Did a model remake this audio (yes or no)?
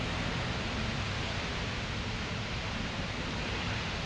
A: no